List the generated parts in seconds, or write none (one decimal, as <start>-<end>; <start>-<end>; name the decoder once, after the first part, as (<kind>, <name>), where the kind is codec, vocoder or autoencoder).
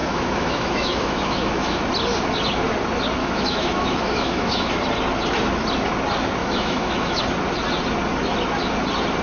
0.0-1.8 (autoencoder, DAC-VAE); 3.2-4.7; 6.4-7.2